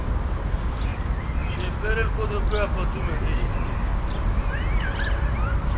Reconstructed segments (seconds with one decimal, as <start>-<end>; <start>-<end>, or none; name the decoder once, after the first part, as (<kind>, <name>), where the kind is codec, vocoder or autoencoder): none